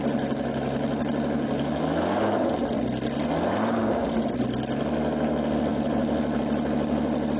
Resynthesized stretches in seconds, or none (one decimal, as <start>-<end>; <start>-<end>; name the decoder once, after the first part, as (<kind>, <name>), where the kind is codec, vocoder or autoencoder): none